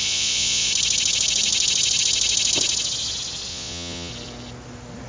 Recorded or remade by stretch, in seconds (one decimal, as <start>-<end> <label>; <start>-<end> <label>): 0.0-0.7 remade; 0.7-3.5 recorded; 3.5-4.1 remade; 4.1-5.1 recorded